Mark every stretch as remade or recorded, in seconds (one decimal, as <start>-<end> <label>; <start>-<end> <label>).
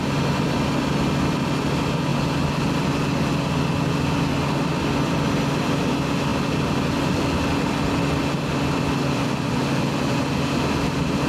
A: 0.0-11.3 recorded